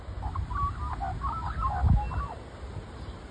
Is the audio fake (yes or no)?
no